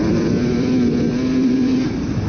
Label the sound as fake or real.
fake